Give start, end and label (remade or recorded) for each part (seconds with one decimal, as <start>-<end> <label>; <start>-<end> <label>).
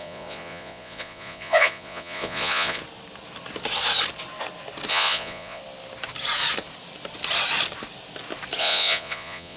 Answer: 0.0-2.8 remade; 2.8-4.9 recorded; 4.9-5.6 remade; 5.6-8.6 recorded; 8.6-9.6 remade